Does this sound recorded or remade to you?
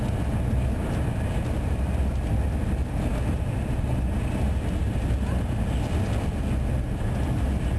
recorded